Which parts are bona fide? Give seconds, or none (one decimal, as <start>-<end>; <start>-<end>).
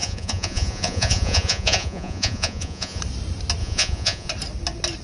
3.0-3.6; 4.3-5.0